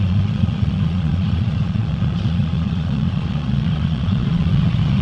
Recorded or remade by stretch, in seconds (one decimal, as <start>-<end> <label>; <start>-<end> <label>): 0.0-5.0 remade